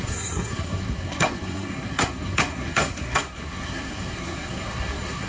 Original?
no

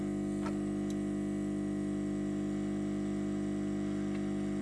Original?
yes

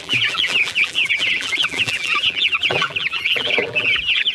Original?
no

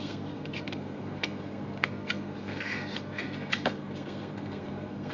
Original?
no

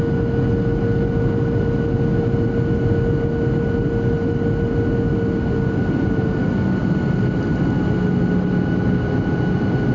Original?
yes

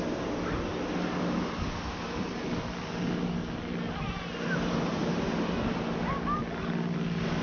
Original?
yes